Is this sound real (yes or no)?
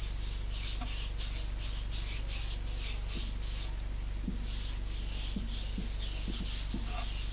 yes